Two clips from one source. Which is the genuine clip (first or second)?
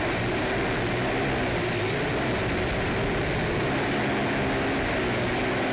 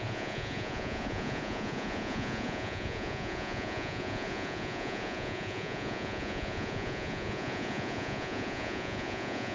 first